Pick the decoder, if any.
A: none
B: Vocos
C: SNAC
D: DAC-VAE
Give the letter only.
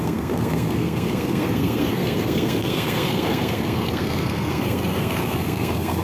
C